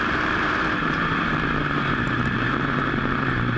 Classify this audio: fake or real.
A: fake